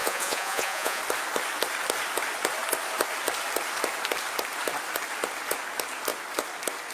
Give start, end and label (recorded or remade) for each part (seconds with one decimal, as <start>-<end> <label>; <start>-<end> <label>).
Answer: 0.0-1.0 remade; 1.0-6.9 recorded